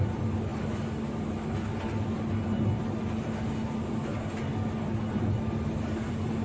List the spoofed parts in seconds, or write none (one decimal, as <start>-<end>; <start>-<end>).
none